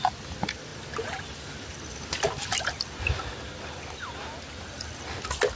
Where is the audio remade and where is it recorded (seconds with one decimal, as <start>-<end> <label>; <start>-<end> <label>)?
0.0-5.5 recorded